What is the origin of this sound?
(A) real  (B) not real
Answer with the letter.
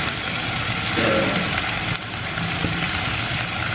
A